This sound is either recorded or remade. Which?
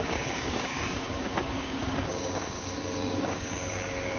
remade